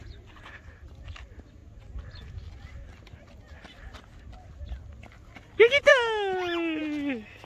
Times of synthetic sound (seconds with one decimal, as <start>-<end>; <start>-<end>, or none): 5.9-6.8